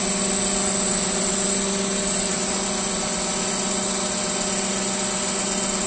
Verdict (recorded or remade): recorded